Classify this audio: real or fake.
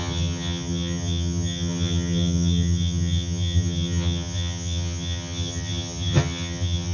fake